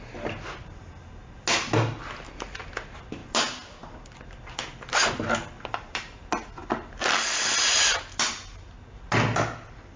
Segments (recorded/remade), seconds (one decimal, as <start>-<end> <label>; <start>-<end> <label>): 0.0-10.0 recorded